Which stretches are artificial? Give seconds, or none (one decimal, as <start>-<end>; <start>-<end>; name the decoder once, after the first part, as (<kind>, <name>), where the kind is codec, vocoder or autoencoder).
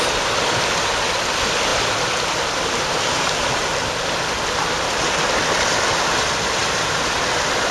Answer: 6.6-7.2 (vocoder, BigVGAN v2)